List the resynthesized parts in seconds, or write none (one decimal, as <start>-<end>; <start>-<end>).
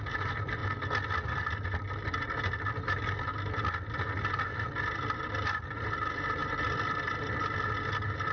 0.0-0.6; 5.2-8.3